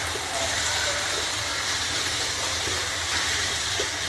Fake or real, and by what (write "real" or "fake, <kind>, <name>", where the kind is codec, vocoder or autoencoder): fake, vocoder, BigVGAN v2